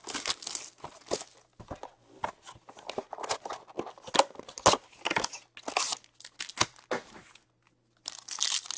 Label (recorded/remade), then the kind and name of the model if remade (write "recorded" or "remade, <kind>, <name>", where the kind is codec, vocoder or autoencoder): recorded